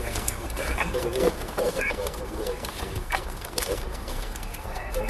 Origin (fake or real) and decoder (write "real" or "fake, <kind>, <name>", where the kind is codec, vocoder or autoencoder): fake, codec, SNAC